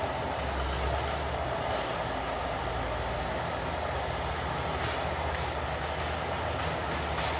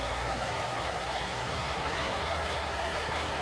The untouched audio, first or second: first